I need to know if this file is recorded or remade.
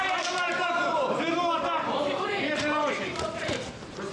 remade